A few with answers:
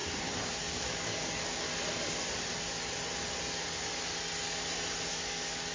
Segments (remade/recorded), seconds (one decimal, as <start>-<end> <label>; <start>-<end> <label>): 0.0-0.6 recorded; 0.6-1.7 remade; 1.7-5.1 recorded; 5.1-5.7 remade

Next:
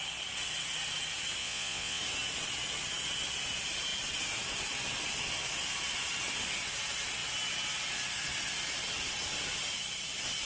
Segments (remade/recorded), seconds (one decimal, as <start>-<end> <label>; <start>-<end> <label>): 0.0-1.4 recorded; 1.4-2.0 remade; 2.0-10.5 recorded

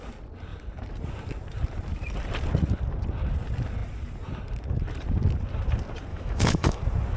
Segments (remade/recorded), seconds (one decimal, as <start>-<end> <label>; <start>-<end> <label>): 0.0-6.1 recorded; 6.1-6.8 remade; 6.8-7.2 recorded

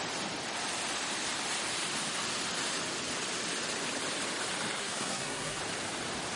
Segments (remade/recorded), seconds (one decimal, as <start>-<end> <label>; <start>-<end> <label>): 0.0-4.8 recorded; 4.8-5.6 remade; 5.6-6.4 recorded

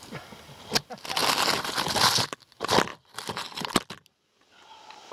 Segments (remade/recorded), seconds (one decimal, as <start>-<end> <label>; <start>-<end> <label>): 0.0-5.1 recorded

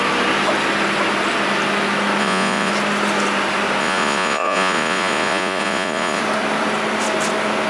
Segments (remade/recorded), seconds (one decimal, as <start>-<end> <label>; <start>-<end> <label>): 0.0-2.2 recorded; 2.2-2.7 remade; 2.7-3.8 recorded; 3.8-6.2 remade; 6.2-7.7 recorded

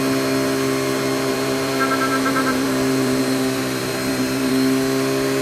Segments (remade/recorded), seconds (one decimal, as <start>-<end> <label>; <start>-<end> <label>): 0.0-1.3 recorded; 1.3-4.5 remade; 4.5-5.4 recorded